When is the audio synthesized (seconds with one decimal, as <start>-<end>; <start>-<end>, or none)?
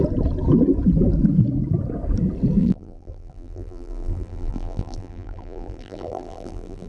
2.6-6.9